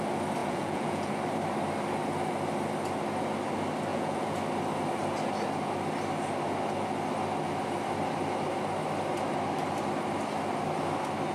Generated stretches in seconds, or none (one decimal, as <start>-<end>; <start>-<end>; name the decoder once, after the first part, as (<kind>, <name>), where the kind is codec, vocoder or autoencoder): 0.4-1.1 (vocoder, Vocos); 3.9-4.4